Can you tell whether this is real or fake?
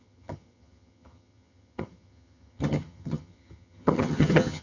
fake